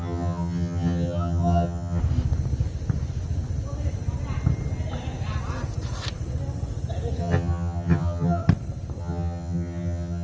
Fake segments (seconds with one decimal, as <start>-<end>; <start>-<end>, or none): 0.0-2.0; 7.2-8.4; 9.0-10.2